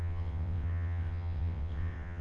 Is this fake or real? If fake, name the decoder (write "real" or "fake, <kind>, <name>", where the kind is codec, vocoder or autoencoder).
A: fake, vocoder, WaveNeXt